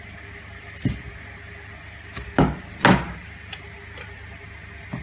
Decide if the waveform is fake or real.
real